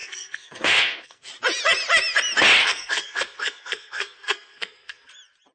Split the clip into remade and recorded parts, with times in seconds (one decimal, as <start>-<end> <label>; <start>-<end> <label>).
0.0-1.3 remade; 1.3-2.6 recorded; 2.6-5.1 remade; 5.1-5.5 recorded